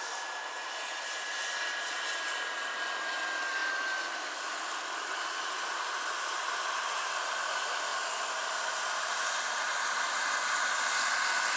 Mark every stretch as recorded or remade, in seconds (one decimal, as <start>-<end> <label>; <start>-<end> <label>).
0.0-11.6 recorded